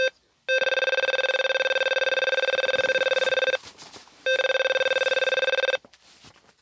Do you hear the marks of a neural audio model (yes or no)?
no